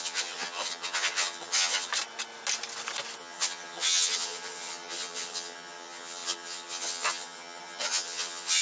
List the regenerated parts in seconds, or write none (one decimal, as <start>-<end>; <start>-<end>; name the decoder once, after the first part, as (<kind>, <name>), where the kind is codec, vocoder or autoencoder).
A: 0.0-1.9 (vocoder, HiFi-GAN); 3.2-8.6